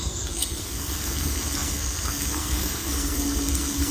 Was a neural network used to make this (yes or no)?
yes